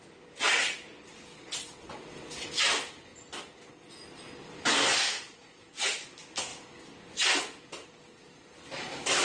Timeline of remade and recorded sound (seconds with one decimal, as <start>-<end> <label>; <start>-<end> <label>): 0.0-1.3 recorded; 1.3-2.5 remade; 2.5-9.2 recorded